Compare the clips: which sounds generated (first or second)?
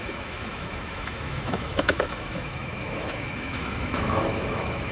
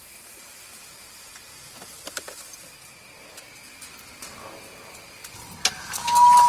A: first